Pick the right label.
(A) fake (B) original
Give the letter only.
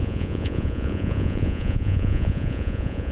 A